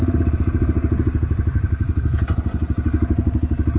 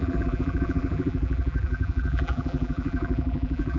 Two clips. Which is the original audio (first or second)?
first